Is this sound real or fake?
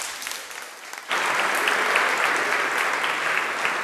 real